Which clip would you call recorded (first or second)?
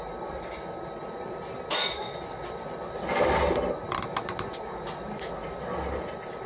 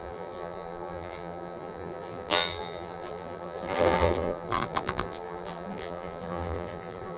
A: first